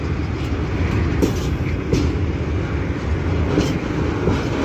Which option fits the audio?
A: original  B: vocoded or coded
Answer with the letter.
A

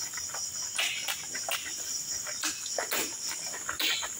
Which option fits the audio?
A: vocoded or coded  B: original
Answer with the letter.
B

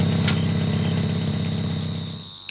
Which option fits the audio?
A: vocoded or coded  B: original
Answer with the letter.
B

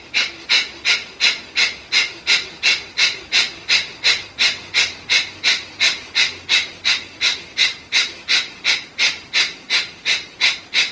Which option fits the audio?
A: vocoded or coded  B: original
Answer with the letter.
B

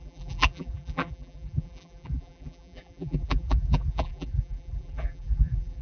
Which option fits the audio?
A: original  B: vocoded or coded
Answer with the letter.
B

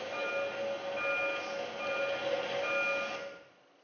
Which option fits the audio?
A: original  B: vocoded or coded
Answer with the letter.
A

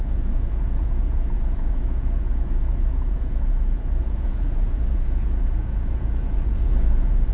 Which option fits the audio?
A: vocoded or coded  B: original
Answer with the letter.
A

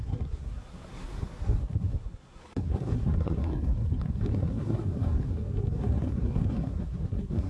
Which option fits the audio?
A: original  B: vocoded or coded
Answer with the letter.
B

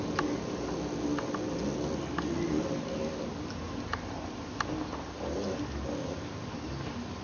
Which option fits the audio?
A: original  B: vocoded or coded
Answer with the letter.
A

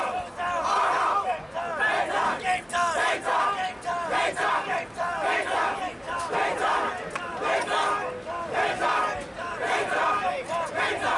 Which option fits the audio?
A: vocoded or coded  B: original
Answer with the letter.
B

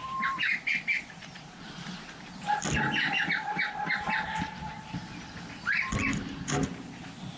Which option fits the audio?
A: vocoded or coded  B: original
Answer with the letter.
A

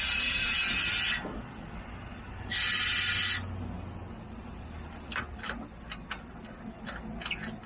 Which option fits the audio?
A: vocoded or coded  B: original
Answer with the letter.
B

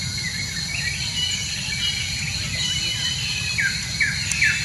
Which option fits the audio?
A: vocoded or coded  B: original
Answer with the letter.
B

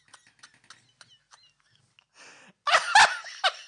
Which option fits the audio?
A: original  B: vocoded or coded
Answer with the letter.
A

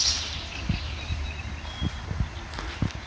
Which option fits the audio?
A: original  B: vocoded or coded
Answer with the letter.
A